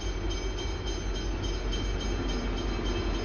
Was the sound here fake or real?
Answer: real